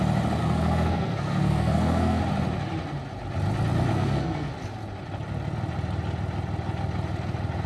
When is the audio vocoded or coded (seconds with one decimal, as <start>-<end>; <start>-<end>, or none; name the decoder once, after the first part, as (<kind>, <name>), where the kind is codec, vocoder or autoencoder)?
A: 0.4-2.2 (codec, SNAC); 3.9-4.5